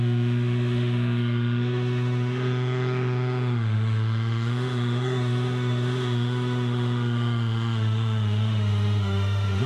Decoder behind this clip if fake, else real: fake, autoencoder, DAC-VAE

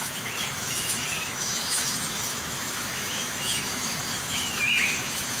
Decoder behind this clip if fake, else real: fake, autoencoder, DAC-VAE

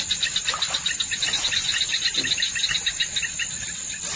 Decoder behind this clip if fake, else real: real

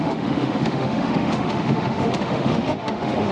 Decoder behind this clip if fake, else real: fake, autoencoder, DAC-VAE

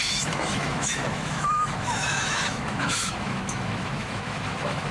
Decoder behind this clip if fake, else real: fake, autoencoder, DAC-VAE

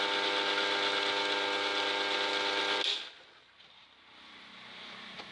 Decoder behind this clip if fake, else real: real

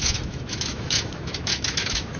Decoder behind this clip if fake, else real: fake, autoencoder, DAC-VAE